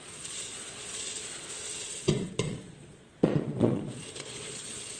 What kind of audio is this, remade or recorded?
remade